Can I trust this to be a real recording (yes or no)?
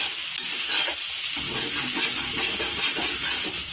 yes